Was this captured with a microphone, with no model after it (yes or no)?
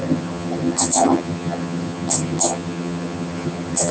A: no